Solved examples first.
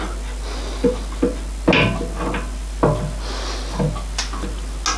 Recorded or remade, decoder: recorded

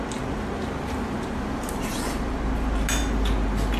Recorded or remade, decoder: recorded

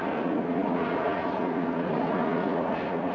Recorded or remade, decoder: remade, vocoder, Vocos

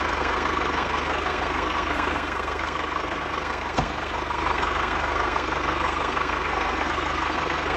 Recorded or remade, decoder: remade, codec, SNAC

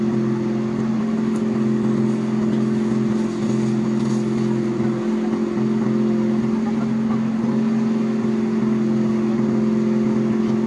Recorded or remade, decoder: recorded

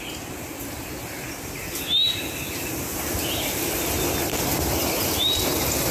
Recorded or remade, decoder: recorded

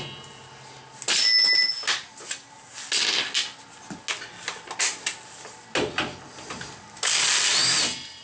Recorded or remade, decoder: recorded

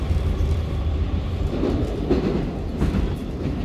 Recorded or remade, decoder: remade, vocoder, BigVGAN v2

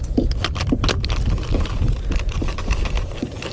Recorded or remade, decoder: recorded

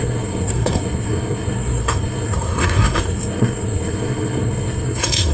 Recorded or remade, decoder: remade, codec, SNAC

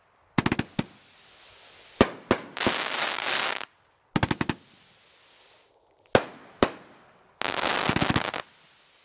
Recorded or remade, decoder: recorded